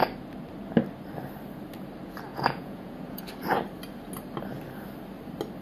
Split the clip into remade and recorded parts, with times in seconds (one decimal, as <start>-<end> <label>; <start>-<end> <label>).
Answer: 0.0-2.3 recorded; 2.3-3.2 remade; 3.2-5.6 recorded

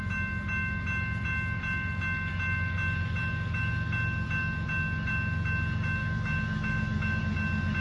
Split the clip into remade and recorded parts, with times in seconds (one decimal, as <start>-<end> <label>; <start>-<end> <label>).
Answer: 0.0-6.0 recorded; 6.0-7.2 remade; 7.2-7.8 recorded

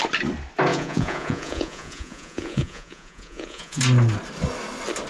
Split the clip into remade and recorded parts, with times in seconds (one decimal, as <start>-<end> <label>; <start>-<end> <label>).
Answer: 0.0-0.7 recorded; 0.7-3.8 remade; 3.8-5.1 recorded